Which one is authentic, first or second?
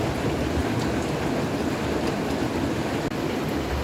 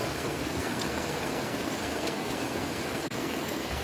first